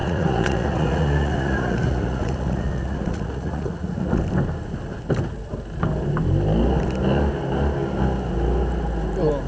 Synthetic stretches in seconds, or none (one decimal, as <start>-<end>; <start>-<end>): 0.0-4.2